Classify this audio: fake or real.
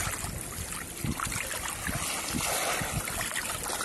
real